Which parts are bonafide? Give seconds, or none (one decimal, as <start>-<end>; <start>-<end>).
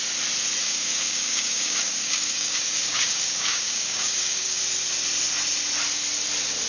0.0-0.6; 4.6-6.7